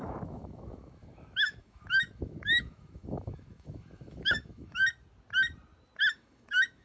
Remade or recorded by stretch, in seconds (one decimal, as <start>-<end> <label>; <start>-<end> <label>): 0.0-4.8 remade; 4.8-6.1 recorded; 6.1-6.8 remade